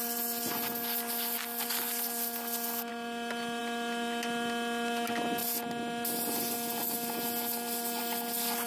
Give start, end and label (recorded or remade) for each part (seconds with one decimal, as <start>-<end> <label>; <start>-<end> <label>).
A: 0.0-8.7 recorded